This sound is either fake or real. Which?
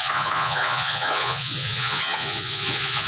fake